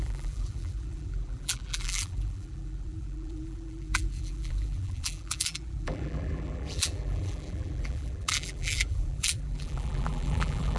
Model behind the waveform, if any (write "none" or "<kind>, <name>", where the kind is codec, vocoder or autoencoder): vocoder, BigVGAN v2